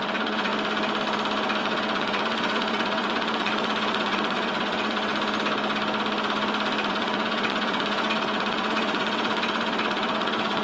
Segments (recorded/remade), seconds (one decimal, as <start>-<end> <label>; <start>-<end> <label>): 0.0-0.5 remade; 0.5-1.6 recorded; 1.6-5.1 remade; 5.1-6.9 recorded; 6.9-10.6 remade